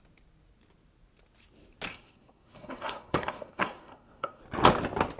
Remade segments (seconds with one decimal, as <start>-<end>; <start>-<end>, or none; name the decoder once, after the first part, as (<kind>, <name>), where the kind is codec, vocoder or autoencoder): 1.9-4.4 (codec, SNAC)